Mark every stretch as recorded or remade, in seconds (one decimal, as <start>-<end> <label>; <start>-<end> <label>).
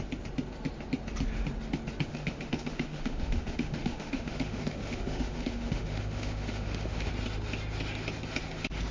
0.0-2.1 recorded; 2.1-7.1 remade; 7.1-8.9 recorded